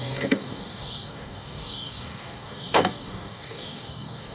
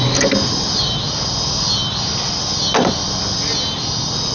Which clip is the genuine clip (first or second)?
second